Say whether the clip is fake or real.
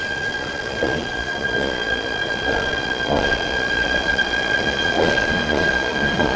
fake